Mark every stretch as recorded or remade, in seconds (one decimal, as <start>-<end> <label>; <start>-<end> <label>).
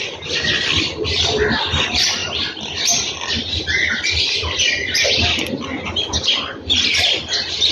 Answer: 0.0-7.7 recorded